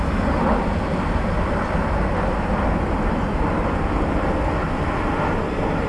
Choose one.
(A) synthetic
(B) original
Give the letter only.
B